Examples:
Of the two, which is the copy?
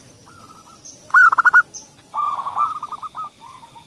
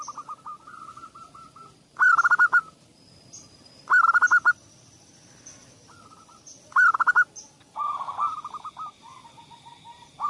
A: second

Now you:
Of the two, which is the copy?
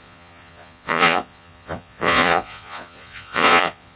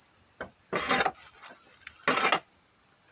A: first